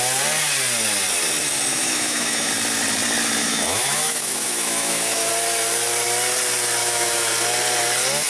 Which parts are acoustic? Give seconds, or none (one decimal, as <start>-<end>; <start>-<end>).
0.0-1.7; 2.5-3.4; 5.3-6.8; 7.3-8.3